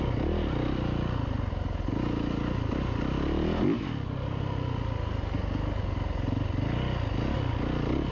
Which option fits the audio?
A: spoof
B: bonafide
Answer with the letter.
B